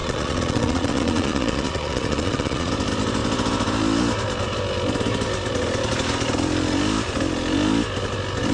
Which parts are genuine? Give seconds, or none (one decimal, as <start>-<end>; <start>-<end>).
2.7-8.5